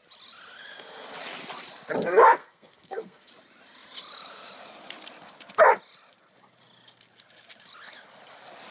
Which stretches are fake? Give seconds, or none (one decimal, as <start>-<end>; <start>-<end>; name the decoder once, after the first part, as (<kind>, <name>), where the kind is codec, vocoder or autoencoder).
2.4-3.3 (codec, SNAC)